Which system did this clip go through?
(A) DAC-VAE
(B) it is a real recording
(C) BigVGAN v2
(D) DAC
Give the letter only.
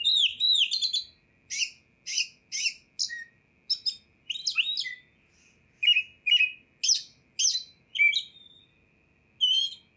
B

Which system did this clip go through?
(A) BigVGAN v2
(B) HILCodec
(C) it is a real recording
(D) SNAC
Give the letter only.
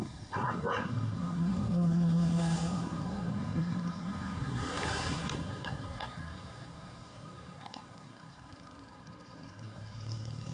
D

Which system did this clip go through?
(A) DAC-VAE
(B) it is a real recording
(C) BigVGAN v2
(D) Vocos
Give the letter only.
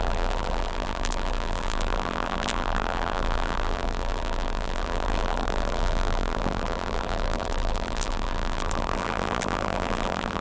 C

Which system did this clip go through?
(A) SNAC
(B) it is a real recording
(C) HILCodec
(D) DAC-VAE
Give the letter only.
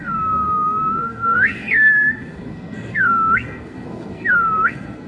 A